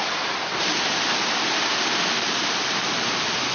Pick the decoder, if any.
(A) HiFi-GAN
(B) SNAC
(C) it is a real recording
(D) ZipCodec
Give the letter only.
C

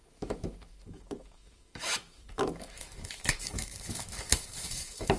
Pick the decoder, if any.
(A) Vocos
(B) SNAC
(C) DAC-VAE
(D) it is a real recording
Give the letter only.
C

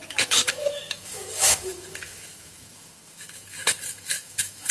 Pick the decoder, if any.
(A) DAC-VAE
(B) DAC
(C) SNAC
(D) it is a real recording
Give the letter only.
A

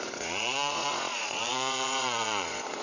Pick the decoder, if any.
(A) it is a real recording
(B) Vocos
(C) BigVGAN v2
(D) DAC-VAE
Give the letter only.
B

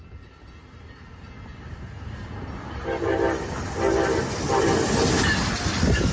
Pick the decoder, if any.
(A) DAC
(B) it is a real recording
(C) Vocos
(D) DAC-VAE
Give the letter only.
B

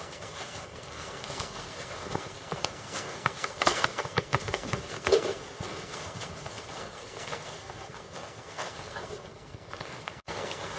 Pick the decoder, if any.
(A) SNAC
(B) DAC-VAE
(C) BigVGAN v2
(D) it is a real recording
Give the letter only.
A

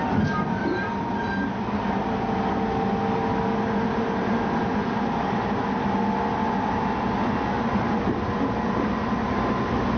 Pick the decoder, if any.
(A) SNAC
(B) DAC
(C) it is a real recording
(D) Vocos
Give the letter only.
C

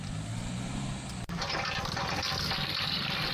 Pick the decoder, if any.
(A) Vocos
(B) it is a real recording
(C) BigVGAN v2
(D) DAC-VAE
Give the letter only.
C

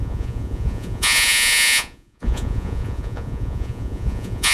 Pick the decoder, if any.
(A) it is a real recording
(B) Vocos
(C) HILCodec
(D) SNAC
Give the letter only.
B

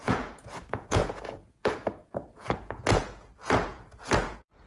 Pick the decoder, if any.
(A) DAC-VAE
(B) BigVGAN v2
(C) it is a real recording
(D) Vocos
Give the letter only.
D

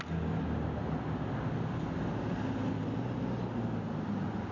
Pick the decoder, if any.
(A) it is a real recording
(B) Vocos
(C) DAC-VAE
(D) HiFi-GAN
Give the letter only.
A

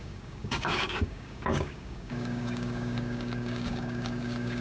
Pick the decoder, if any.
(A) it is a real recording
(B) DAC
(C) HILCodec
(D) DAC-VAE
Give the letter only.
B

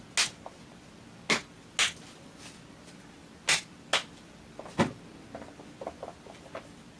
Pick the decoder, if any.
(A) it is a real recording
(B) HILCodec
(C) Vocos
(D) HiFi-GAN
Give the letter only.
A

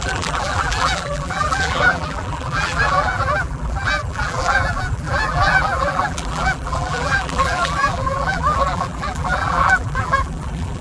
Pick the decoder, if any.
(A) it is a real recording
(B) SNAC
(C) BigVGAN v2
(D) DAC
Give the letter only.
C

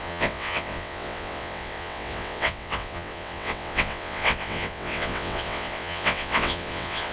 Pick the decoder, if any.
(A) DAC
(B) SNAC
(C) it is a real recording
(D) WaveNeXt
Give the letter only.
D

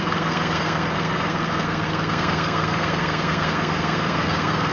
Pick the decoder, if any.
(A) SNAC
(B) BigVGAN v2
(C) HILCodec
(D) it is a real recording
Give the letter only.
A